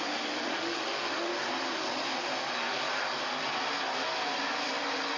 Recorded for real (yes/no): yes